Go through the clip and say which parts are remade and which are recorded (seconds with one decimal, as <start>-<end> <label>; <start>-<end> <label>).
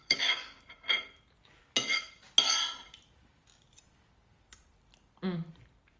0.0-0.6 remade; 0.6-6.0 recorded